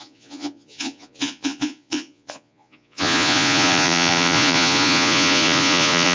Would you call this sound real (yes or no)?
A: no